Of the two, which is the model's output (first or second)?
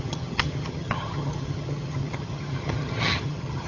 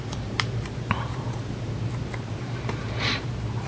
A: first